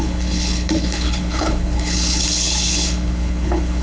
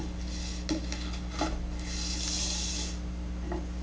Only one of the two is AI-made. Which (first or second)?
first